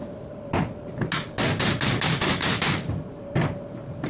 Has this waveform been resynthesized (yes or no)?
no